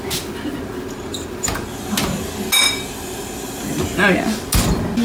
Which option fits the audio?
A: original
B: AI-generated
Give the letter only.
A